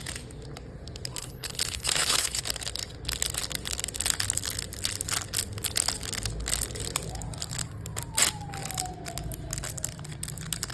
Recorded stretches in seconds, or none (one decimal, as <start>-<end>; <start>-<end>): 0.0-1.2; 2.4-10.7